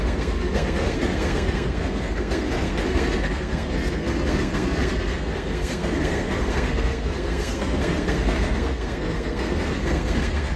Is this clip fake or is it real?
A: fake